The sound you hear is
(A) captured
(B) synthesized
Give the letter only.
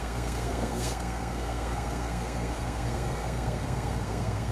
B